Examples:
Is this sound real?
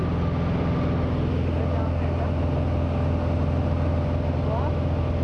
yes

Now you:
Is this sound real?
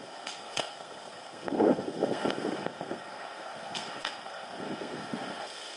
no